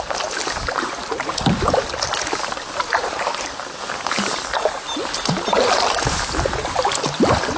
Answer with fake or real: real